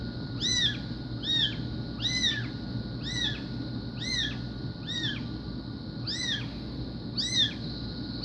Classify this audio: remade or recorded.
recorded